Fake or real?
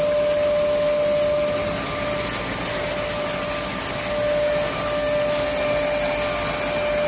real